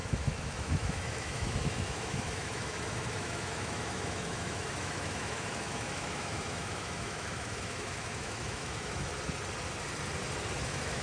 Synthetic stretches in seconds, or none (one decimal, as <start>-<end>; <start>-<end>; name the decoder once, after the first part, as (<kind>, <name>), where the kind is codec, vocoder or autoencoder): 0.0-9.1 (autoencoder, DAC-VAE); 10.6-11.0

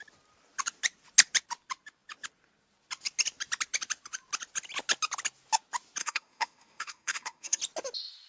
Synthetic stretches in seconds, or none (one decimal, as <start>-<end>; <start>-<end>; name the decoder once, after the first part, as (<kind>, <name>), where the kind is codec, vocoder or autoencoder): 6.0-7.6 (codec, SNAC)

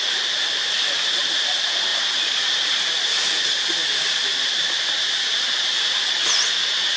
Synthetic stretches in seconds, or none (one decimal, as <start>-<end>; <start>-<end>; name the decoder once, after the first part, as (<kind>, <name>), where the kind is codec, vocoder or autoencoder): none

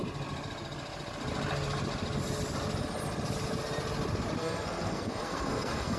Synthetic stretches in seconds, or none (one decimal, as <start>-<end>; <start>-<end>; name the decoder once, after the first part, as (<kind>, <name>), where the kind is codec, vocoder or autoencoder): 4.4-6.0 (codec, SNAC)

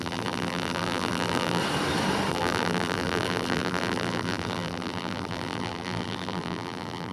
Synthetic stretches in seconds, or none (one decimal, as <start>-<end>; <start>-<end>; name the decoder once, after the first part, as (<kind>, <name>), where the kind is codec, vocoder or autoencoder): 0.0-1.6 (vocoder, BigVGAN v2); 2.3-7.1

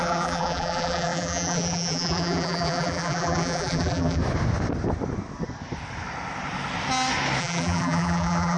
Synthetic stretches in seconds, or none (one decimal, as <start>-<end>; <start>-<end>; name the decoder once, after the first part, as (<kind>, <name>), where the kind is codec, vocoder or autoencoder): 0.0-4.2 (vocoder, BigVGAN v2); 7.4-8.6